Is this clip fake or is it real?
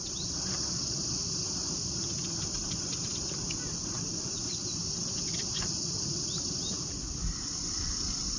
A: real